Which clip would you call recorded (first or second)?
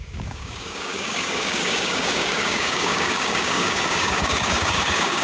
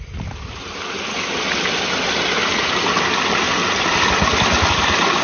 second